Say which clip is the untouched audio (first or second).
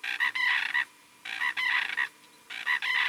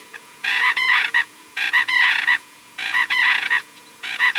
first